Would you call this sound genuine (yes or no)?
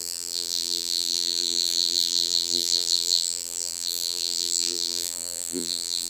no